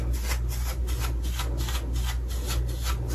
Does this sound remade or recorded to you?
recorded